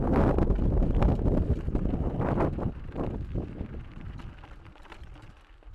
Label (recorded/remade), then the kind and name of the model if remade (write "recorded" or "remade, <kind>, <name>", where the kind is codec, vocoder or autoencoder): recorded